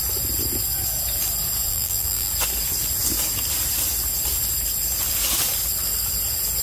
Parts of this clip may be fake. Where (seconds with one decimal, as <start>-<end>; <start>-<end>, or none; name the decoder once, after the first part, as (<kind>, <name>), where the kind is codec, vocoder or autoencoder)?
1.7-2.3 (vocoder, BigVGAN v2)